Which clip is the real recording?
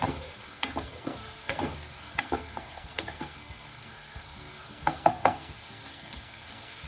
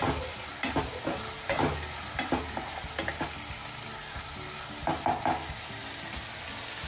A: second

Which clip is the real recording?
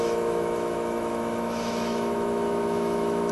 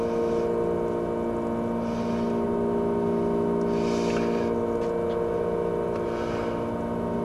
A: second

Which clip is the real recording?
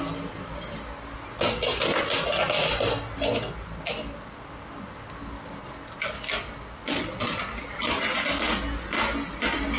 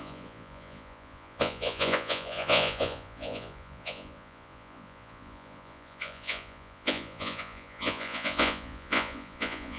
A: first